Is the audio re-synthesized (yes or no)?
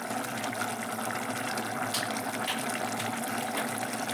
no